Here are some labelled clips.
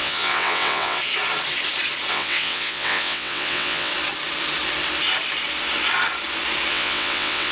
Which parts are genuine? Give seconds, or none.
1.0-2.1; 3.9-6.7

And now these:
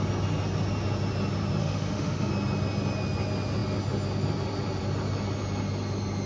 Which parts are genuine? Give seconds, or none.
0.0-1.6; 2.3-6.3

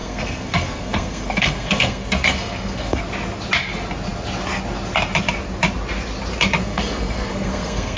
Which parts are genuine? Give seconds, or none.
3.0-6.6

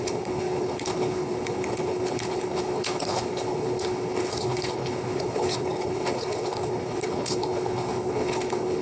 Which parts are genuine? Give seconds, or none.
none

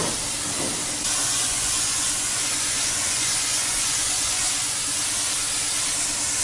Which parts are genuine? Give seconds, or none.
0.0-1.2; 5.0-6.4

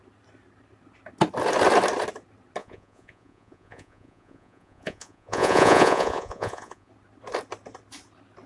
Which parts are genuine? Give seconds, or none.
0.0-2.6; 6.9-8.5